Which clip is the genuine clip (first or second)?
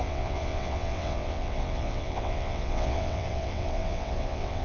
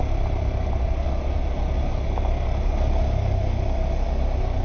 second